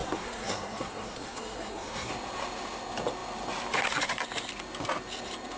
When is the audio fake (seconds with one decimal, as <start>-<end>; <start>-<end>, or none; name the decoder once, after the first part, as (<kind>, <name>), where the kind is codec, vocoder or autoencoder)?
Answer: 0.0-2.1 (codec, SNAC)

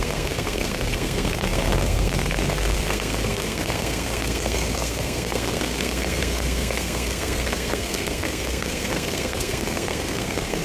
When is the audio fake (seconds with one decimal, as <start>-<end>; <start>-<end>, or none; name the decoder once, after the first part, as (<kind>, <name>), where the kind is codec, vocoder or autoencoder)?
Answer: 0.0-10.6 (codec, SNAC)

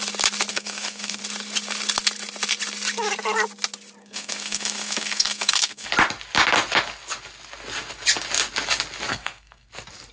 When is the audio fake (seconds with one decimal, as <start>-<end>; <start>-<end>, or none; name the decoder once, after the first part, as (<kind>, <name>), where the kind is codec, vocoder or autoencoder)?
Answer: 0.5-1.2 (codec, SNAC); 4.0-5.9; 9.1-9.7

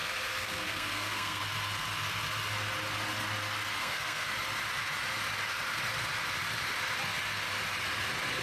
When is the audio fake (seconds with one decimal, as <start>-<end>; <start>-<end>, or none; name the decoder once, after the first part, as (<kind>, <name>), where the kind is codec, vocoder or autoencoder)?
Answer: 0.0-1.4 (codec, SNAC); 3.8-4.3